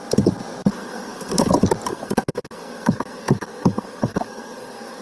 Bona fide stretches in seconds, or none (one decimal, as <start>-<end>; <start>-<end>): 0.0-0.7; 1.5-1.9

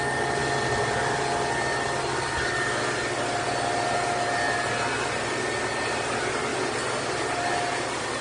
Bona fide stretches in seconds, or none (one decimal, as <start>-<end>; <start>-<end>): 0.0-8.2

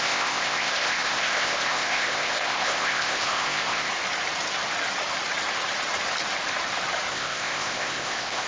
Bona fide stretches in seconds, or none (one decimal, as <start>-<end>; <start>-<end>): 3.9-7.1

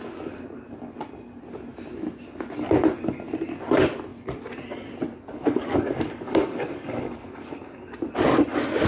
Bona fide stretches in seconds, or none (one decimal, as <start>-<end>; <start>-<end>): 0.0-5.3; 7.9-8.9

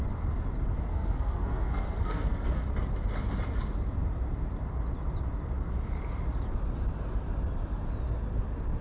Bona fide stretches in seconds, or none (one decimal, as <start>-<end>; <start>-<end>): 0.0-0.9; 2.6-8.8